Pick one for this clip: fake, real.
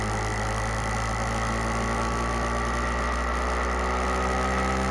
real